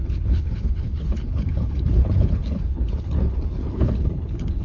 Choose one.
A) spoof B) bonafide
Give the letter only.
A